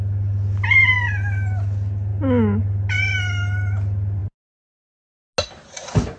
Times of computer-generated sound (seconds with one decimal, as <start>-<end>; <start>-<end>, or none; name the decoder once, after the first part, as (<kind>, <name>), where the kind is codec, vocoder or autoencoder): none